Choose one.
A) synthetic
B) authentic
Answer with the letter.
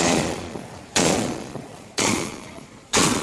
A